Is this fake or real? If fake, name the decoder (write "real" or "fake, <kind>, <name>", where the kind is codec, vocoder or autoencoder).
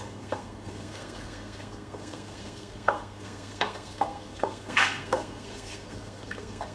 fake, codec, SNAC